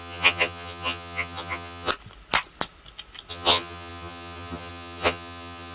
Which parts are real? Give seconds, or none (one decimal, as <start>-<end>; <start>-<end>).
1.9-3.3